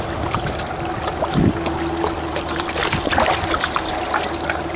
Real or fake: real